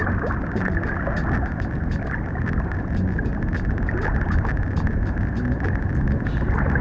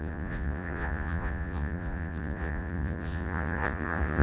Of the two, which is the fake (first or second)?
second